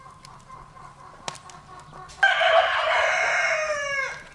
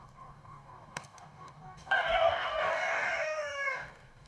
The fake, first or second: second